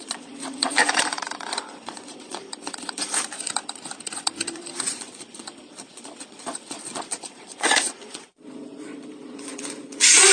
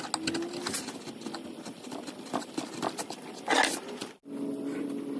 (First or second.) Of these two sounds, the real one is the second